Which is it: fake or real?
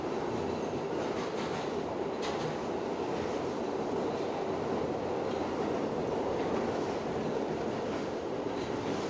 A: real